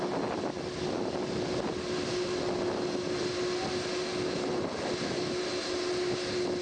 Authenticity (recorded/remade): recorded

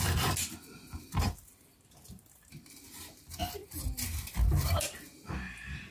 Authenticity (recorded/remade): recorded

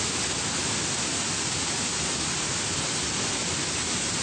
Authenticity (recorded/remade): recorded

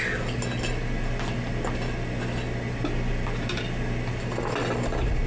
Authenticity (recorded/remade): recorded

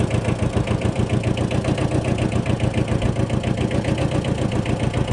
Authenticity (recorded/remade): recorded